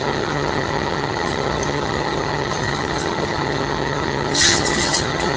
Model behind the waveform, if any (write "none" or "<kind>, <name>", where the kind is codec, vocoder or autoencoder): vocoder, HiFi-GAN